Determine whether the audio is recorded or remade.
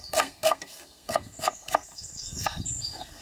remade